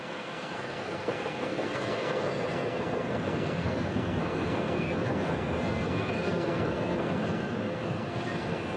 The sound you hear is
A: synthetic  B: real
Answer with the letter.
A